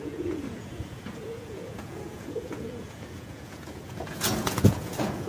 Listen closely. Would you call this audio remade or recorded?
remade